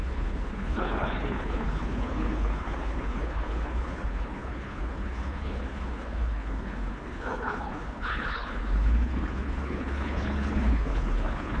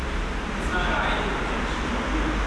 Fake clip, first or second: first